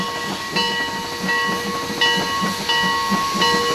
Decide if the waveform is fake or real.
real